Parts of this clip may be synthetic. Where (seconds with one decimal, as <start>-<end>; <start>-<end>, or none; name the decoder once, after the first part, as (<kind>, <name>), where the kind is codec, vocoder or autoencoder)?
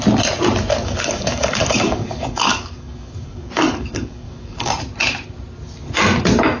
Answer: 0.7-4.7 (codec, DAC)